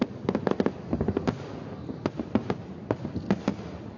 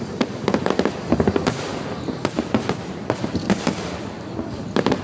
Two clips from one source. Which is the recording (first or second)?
first